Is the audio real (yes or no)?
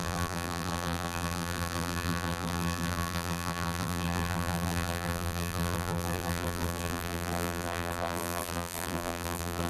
no